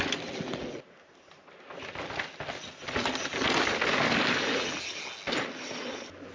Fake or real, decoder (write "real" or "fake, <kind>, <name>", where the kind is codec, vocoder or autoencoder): real